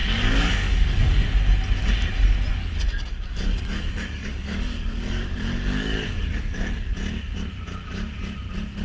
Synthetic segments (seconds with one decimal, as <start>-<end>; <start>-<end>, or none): 0.0-1.3; 2.5-6.9